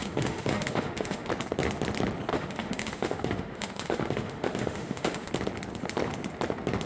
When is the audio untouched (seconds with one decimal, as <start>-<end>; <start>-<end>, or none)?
1.3-2.3; 5.3-6.9